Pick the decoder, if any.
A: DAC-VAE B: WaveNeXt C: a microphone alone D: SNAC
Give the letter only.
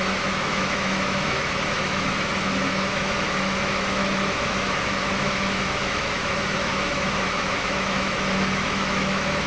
A